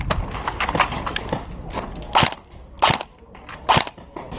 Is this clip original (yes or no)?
yes